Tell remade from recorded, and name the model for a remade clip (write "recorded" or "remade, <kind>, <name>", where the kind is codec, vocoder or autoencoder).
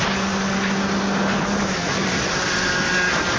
recorded